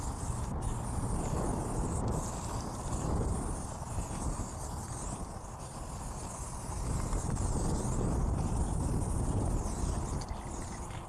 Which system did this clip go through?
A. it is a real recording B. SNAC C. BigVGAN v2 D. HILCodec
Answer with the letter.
A